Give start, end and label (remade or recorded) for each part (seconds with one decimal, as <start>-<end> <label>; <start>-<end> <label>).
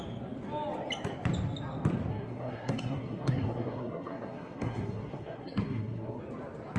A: 0.0-2.1 recorded; 2.1-6.2 remade; 6.2-6.8 recorded